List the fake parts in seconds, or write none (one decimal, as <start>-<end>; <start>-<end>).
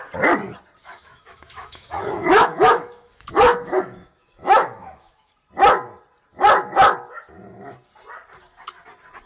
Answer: 0.8-5.3